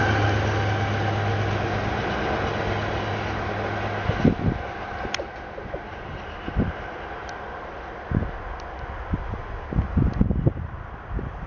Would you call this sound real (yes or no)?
yes